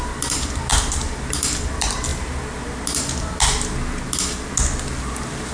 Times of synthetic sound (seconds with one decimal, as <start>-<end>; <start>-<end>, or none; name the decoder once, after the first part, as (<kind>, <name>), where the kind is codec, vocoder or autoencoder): 0.0-2.1 (vocoder, BigVGAN v2)